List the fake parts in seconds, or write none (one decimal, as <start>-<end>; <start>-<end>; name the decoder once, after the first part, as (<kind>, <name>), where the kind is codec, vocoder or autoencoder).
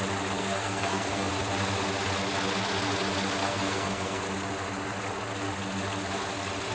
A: 0.4-1.3 (codec, SNAC); 3.4-4.2